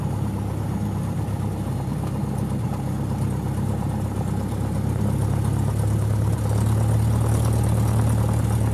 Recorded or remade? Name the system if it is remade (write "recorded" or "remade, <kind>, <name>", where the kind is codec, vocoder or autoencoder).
recorded